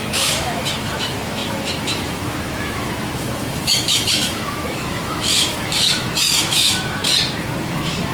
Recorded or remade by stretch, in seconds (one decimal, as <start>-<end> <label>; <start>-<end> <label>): 0.0-7.0 remade; 7.0-7.6 recorded; 7.6-8.1 remade